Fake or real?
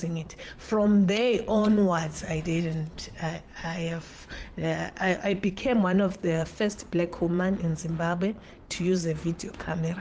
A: fake